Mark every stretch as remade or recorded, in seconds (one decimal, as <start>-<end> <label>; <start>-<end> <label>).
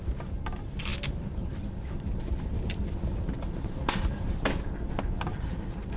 0.0-6.0 recorded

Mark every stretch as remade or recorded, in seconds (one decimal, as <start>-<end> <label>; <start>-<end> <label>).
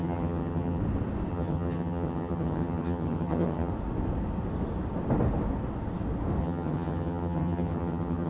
0.0-0.8 remade; 0.8-1.3 recorded; 1.3-3.7 remade; 3.7-6.4 recorded; 6.4-8.3 remade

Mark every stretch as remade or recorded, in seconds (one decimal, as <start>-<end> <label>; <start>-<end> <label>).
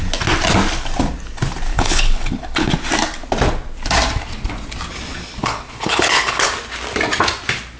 0.0-1.7 recorded; 1.7-2.7 remade; 2.7-5.4 recorded; 5.4-6.5 remade; 6.5-7.8 recorded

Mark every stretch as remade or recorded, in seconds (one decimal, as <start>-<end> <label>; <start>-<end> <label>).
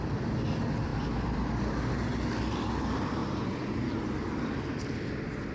0.0-0.9 remade; 0.9-2.7 recorded; 2.7-5.5 remade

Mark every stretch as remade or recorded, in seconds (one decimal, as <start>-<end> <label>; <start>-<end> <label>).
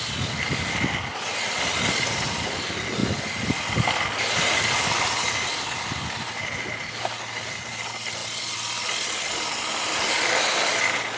0.0-11.2 recorded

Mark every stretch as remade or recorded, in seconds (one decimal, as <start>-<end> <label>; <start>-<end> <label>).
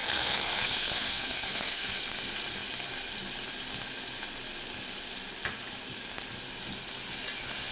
0.0-2.0 remade; 2.0-7.7 recorded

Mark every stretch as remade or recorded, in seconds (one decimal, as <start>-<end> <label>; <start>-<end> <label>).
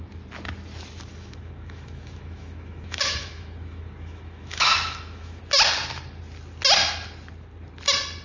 0.0-1.1 recorded; 1.1-5.4 remade; 5.4-8.2 recorded